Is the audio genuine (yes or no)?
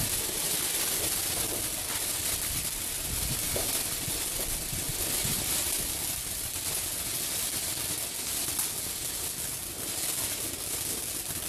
yes